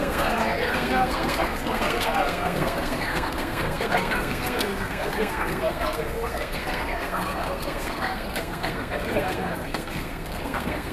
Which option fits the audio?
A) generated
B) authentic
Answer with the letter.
A